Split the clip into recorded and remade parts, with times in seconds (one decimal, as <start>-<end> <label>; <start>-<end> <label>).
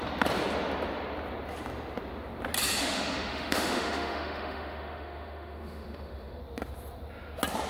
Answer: 0.0-2.8 recorded; 2.8-6.4 remade; 6.4-7.7 recorded